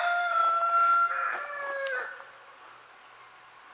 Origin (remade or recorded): recorded